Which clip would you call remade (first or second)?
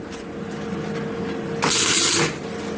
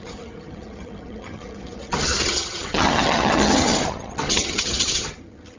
second